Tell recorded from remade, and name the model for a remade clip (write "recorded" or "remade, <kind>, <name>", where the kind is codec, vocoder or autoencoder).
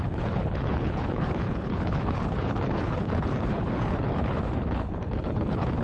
remade, codec, HILCodec